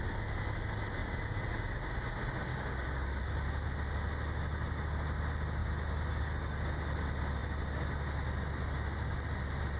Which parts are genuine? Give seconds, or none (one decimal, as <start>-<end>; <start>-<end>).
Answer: 0.0-2.5; 3.2-9.8